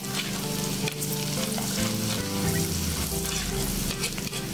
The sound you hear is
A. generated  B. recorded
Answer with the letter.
B